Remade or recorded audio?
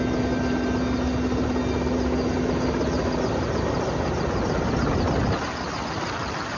recorded